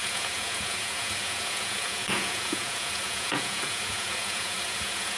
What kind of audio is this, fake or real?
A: fake